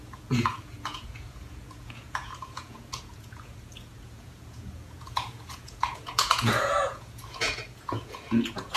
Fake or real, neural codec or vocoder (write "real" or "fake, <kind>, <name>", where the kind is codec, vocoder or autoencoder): fake, vocoder, Vocos